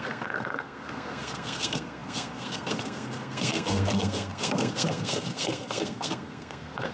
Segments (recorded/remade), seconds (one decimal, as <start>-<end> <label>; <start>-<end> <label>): 0.0-6.9 remade

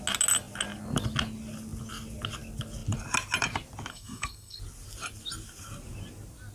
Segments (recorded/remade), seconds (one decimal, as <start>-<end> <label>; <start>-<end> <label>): 0.0-3.9 recorded; 3.9-4.6 remade; 4.6-6.5 recorded